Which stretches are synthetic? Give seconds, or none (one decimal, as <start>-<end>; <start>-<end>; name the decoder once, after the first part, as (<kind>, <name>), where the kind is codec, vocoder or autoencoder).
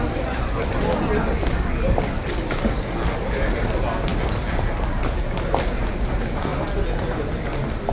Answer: none